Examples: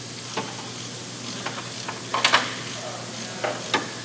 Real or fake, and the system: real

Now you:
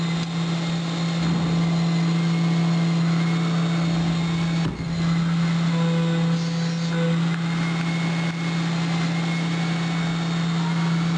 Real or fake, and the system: real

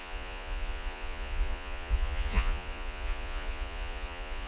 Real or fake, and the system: fake, vocoder, Vocos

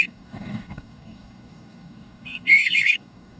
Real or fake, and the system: fake, codec, DAC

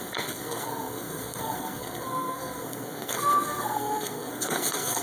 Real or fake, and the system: fake, codec, SNAC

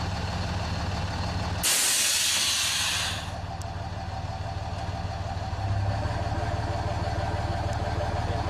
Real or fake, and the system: real